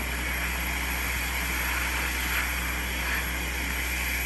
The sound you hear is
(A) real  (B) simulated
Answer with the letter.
A